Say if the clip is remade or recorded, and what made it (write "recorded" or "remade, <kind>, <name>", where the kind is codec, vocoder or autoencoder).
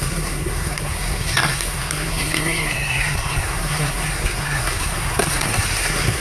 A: remade, codec, SNAC